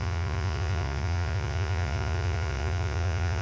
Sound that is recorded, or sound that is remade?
remade